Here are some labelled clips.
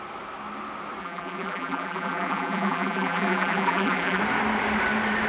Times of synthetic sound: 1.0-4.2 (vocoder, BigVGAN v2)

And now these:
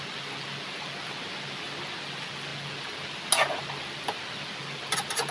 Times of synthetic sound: none

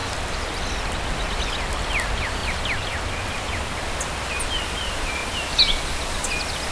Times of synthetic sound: none

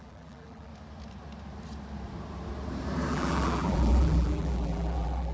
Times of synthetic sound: 0.0-0.7 (vocoder, BigVGAN v2); 3.1-5.3

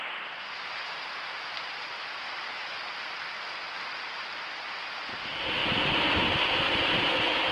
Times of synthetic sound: 0.0-2.7 (vocoder, BigVGAN v2); 4.1-5.6; 6.5-7.5

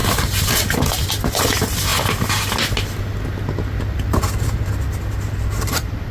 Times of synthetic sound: 1.1-1.9 (vocoder, BigVGAN v2); 5.6-6.1